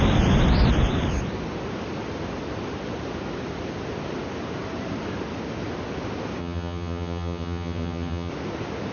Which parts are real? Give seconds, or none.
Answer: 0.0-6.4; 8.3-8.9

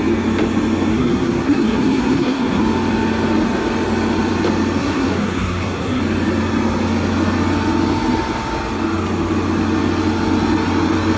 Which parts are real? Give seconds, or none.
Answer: 0.0-0.9; 2.6-4.8; 6.0-11.2

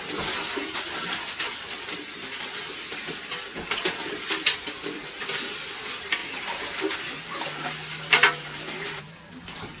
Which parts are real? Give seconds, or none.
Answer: 0.0-9.8

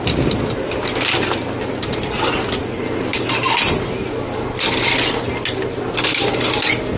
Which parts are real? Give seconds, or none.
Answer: 0.0-7.0

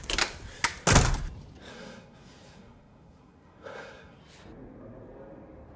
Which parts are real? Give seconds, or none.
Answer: 0.0-1.7; 4.2-5.8

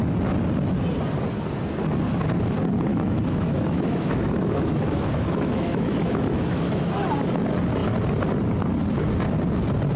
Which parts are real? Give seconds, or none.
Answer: 0.0-2.9; 6.9-10.0